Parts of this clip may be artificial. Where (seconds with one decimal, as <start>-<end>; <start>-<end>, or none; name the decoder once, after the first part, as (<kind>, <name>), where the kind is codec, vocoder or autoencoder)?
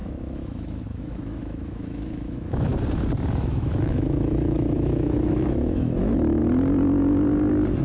0.0-2.7 (autoencoder, DAC-VAE); 3.3-6.4